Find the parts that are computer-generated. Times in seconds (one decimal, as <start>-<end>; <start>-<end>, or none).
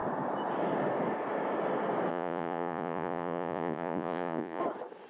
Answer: 2.1-4.6